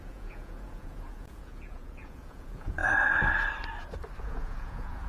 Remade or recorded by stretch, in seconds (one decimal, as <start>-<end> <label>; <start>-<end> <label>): 0.0-2.8 remade; 2.8-4.2 recorded; 4.2-5.1 remade